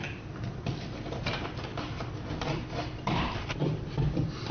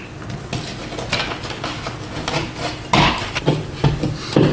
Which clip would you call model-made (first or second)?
first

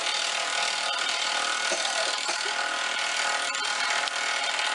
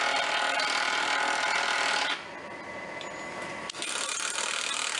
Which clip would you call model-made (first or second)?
first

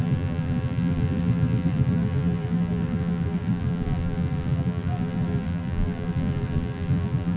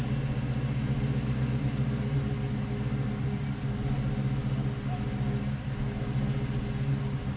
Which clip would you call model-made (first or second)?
first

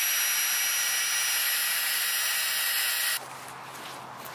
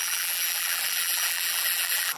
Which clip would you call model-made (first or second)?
second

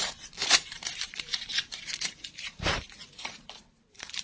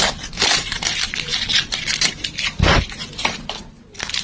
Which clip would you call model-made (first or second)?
first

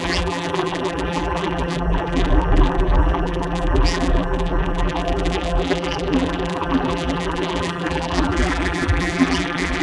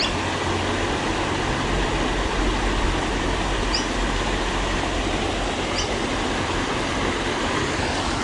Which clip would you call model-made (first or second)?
first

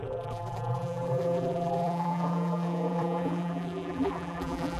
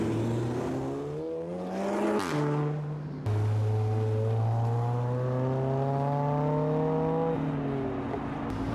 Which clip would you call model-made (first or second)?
first